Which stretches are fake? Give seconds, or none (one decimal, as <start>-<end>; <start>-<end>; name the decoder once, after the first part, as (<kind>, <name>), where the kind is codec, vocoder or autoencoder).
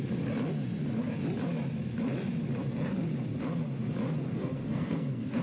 4.3-5.4 (codec, SNAC)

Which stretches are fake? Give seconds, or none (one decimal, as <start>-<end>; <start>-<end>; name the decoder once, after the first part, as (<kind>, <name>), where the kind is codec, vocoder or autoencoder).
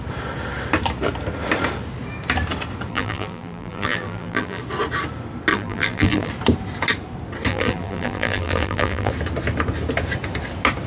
2.9-4.6 (vocoder, BigVGAN v2); 5.5-6.3; 7.5-9.1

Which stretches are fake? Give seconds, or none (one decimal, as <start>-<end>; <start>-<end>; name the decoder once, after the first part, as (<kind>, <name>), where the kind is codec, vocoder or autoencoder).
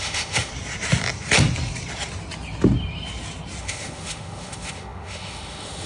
0.0-0.5 (autoencoder, DAC-VAE); 3.6-5.9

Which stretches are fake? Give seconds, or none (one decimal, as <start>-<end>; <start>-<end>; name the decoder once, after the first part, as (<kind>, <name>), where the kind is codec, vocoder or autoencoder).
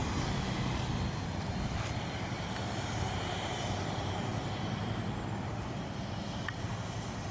none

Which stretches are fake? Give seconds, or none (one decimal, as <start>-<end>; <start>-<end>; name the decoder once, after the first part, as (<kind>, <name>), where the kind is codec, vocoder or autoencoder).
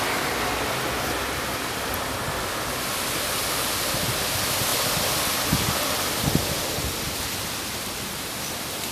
none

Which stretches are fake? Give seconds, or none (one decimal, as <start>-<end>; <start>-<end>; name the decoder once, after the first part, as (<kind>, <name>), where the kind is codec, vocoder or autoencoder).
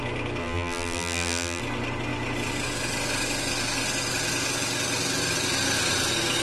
0.4-1.6 (vocoder, BigVGAN v2)